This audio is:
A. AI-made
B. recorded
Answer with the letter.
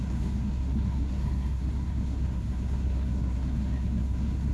A